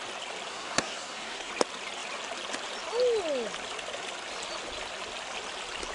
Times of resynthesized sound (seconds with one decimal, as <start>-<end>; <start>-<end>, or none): 0.5-1.5